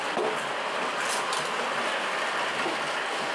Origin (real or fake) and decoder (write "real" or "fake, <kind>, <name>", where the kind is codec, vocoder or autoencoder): real